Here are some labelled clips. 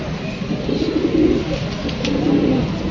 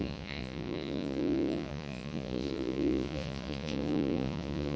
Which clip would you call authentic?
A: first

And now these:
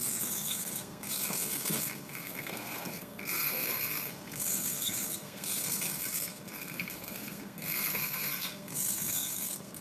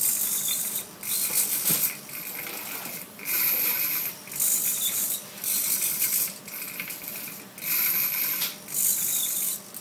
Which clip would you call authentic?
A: second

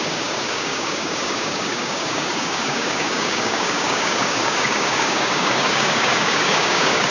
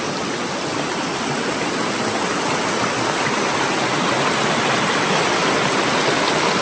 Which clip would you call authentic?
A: second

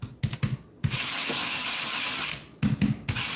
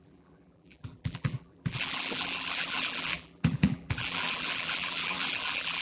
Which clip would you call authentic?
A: first